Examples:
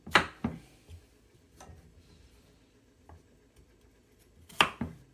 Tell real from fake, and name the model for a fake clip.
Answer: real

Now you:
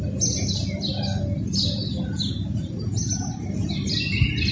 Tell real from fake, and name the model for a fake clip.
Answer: real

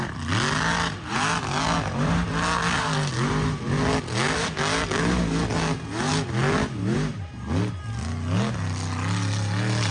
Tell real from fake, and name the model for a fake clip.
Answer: real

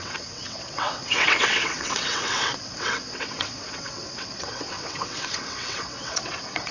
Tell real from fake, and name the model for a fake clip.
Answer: fake, vocoder, WaveNeXt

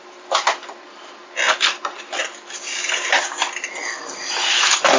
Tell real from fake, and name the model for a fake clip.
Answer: real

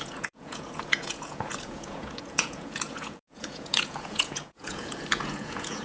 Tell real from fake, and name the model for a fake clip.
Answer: fake, vocoder, Vocos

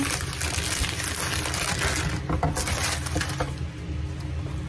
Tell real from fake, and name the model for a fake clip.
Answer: real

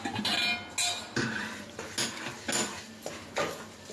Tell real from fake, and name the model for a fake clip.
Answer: real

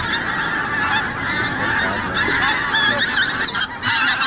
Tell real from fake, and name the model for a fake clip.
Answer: real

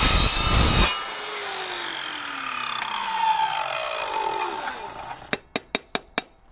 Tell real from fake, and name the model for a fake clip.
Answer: real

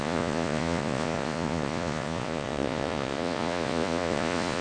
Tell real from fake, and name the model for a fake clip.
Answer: fake, vocoder, Vocos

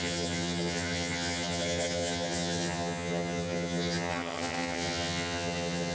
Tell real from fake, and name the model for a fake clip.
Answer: fake, vocoder, HiFi-GAN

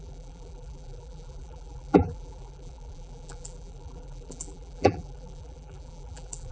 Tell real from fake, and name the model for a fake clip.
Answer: fake, vocoder, BigVGAN v2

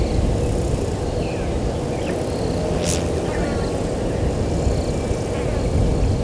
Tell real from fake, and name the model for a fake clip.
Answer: real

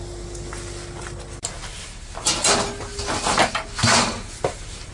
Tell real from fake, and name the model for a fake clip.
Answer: real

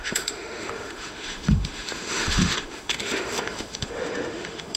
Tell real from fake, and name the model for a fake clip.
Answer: fake, autoencoder, DAC-VAE